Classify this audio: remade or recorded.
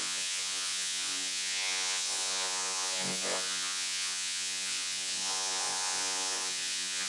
remade